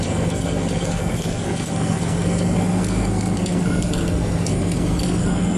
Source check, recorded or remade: remade